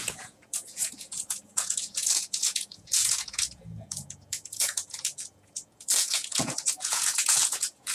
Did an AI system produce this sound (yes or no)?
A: yes